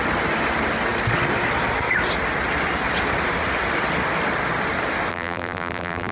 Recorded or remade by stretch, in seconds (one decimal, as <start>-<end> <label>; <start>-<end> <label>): 0.0-5.1 recorded; 5.1-6.1 remade